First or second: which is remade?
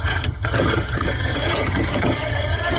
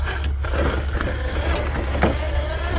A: first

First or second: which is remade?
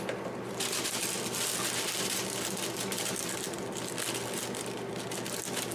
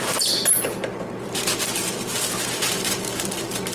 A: second